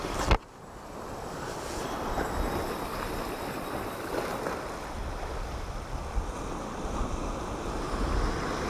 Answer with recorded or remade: recorded